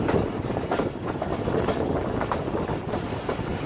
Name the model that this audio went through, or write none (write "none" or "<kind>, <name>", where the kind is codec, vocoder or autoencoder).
none